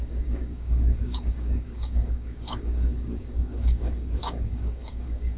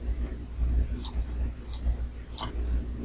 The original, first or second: second